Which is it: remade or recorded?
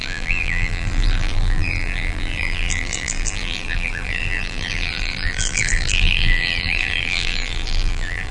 remade